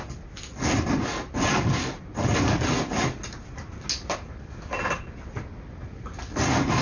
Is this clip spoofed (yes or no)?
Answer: no